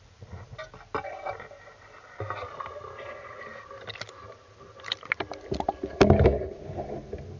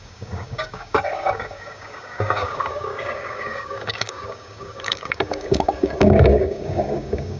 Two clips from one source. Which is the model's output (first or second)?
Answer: second